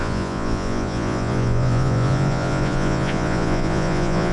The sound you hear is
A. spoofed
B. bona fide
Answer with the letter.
A